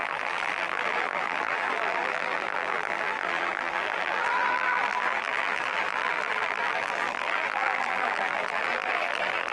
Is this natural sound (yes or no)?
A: no